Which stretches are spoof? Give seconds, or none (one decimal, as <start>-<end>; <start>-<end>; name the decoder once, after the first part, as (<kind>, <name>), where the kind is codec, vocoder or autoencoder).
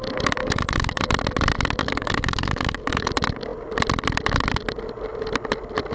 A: 0.4-1.0 (codec, DAC); 1.8-3.1